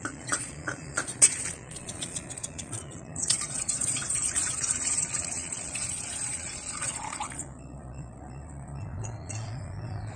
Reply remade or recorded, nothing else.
remade